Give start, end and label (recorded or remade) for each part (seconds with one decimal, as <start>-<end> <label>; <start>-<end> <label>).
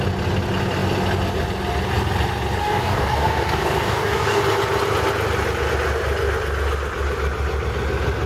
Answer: 0.0-2.6 recorded; 2.6-4.4 remade; 4.4-8.3 recorded